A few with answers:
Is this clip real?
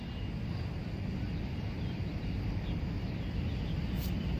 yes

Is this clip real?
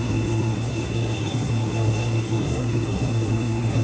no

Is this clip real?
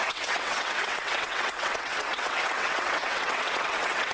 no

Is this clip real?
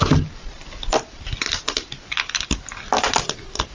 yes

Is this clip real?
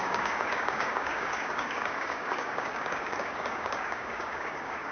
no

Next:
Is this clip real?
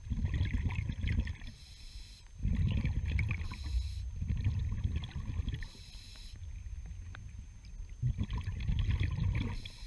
yes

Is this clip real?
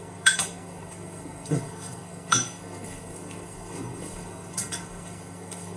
no